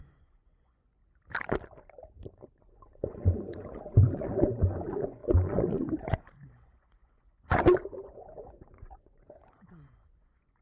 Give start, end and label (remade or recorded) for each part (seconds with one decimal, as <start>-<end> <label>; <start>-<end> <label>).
0.0-1.0 remade; 1.0-2.3 recorded; 2.3-10.6 remade